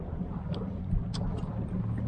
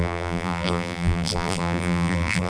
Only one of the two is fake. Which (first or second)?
second